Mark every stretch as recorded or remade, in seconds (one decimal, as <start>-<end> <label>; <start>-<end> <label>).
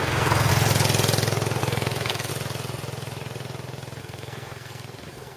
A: 0.0-0.5 remade; 0.5-1.6 recorded; 1.6-2.3 remade; 2.3-4.0 recorded; 4.0-5.4 remade